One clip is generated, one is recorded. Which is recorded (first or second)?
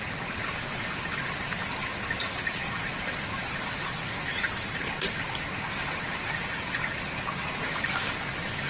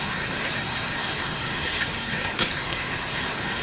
first